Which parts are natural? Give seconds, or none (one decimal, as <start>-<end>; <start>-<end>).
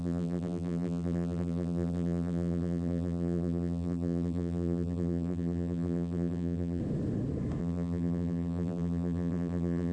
6.8-7.6